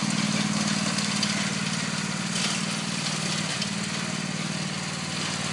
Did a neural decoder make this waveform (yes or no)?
no